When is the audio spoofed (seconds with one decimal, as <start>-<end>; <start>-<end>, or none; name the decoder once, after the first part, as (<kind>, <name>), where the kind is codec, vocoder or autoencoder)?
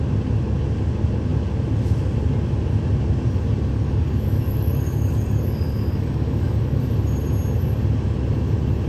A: 3.7-6.8 (codec, DAC)